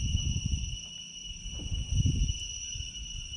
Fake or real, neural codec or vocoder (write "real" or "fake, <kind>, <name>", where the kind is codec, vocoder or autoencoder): fake, vocoder, BigVGAN v2